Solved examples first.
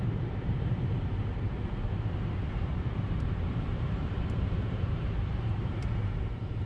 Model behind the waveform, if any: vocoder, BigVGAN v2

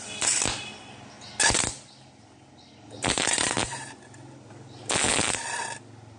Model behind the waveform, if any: none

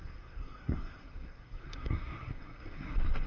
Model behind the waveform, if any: codec, SNAC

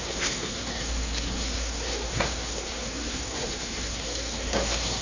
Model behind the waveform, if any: codec, SNAC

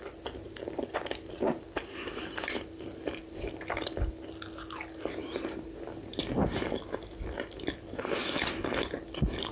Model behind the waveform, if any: none